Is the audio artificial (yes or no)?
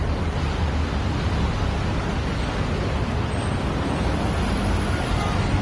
no